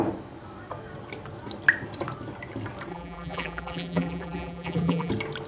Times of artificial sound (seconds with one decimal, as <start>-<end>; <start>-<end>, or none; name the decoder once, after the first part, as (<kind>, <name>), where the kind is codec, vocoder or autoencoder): 2.9-5.1 (vocoder, BigVGAN v2)